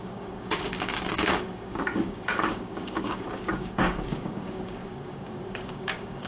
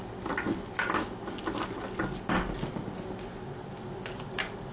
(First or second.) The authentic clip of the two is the second